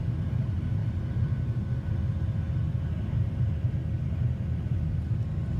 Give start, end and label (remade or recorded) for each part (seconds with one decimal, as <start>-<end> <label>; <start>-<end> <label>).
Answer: 0.0-5.6 recorded